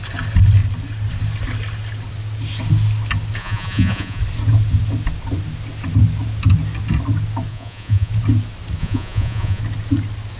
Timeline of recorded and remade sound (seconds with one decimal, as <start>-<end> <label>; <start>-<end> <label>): 0.0-3.4 recorded; 3.4-4.2 remade; 4.2-7.5 recorded; 7.5-8.1 remade; 8.1-8.8 recorded; 8.8-9.6 remade; 9.6-10.4 recorded

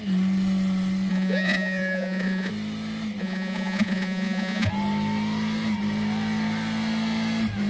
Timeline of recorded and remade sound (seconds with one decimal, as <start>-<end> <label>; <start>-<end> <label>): 0.0-1.1 recorded; 1.1-2.5 remade; 2.5-3.2 recorded; 3.2-4.7 remade; 4.7-7.7 recorded

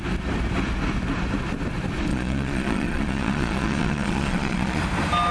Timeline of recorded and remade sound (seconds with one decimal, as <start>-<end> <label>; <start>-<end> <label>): 0.0-2.1 recorded; 2.1-4.8 remade; 4.8-5.3 recorded

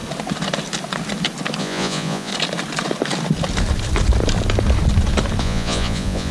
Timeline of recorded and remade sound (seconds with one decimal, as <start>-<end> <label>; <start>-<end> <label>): 0.0-1.6 recorded; 1.6-2.3 remade; 2.3-5.4 recorded; 5.4-6.3 remade

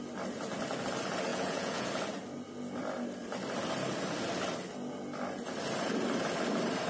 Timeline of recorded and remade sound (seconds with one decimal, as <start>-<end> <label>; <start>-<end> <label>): 0.0-1.3 recorded; 1.3-1.9 remade; 1.9-6.9 recorded

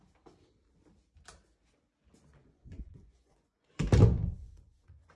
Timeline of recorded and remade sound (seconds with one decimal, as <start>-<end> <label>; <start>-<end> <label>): 0.0-2.4 recorded; 2.4-3.8 remade; 3.8-4.3 recorded; 4.3-5.2 remade

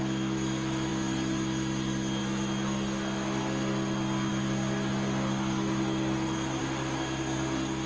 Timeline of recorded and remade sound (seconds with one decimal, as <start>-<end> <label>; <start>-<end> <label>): 0.0-7.9 recorded

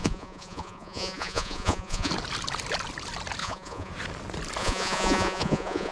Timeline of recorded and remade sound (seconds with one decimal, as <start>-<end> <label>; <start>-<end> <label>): 0.0-2.1 remade; 2.1-3.4 recorded; 3.4-3.9 remade; 3.9-4.6 recorded; 4.6-5.9 remade